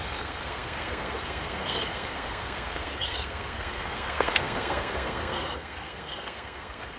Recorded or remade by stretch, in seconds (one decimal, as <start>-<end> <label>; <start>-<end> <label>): 0.0-7.0 remade